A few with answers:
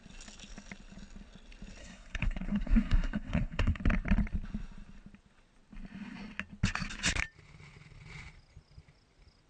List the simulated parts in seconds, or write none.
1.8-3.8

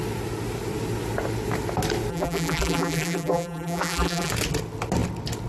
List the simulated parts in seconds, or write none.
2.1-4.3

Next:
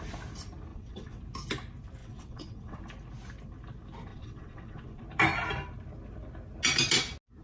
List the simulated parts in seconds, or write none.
0.7-1.2; 2.0-2.8; 4.1-5.0

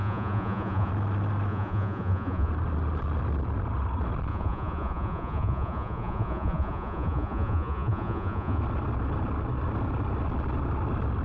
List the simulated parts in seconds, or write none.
0.0-0.9; 1.5-2.5; 4.3-8.6

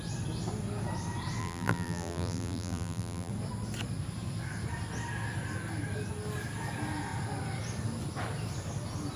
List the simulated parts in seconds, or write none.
1.4-3.3